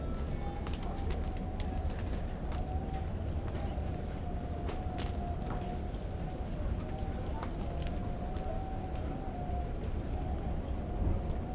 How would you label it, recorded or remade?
recorded